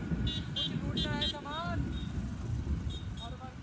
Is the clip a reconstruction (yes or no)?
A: no